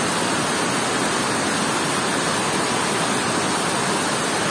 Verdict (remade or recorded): recorded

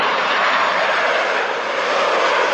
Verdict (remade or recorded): remade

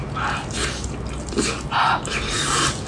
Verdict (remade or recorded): recorded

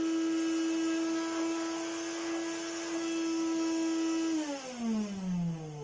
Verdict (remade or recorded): recorded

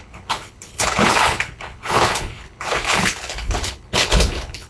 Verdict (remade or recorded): remade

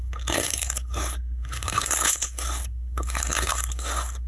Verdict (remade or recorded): remade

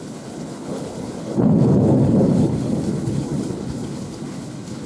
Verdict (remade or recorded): remade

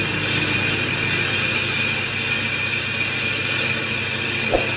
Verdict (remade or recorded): recorded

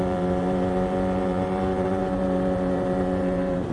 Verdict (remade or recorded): remade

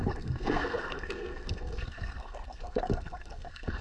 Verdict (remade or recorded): remade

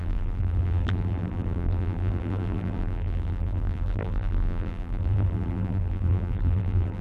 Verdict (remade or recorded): remade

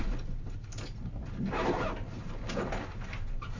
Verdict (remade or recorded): recorded